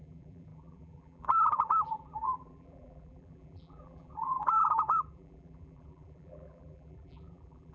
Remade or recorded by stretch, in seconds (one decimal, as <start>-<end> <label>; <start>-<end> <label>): 0.0-7.7 remade